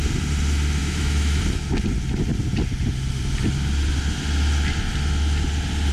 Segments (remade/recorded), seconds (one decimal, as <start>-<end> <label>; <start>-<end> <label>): 0.0-0.8 recorded; 0.8-1.4 remade; 1.4-5.9 recorded